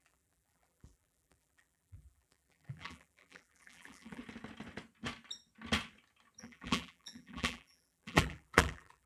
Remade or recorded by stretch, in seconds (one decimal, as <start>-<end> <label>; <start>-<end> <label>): 0.0-4.2 remade; 4.2-6.4 recorded; 6.4-9.1 remade